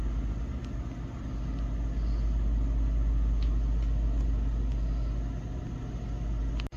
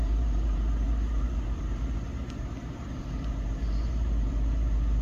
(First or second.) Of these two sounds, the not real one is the second